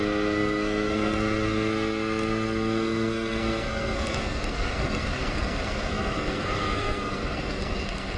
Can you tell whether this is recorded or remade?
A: remade